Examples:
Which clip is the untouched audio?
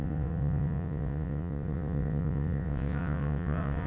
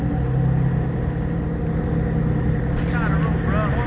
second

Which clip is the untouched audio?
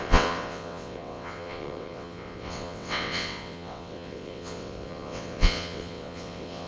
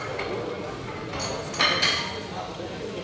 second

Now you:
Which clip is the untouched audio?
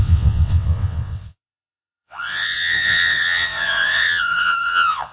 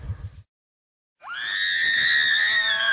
second